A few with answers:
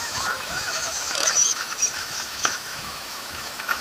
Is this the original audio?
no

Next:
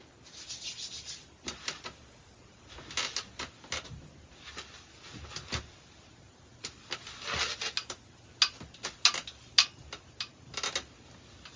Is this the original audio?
yes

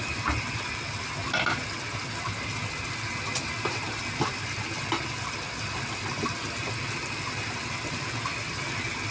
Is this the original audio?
yes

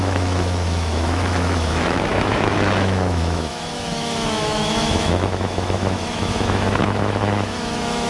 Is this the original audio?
no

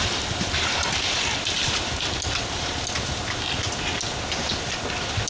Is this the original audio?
yes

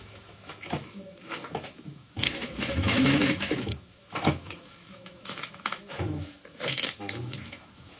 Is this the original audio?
no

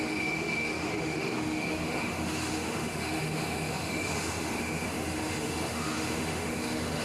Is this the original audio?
no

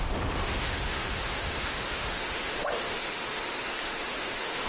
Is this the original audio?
no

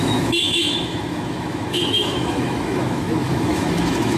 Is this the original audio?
no